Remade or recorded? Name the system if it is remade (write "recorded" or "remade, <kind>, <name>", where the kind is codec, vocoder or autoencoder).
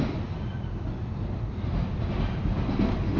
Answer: remade, vocoder, BigVGAN v2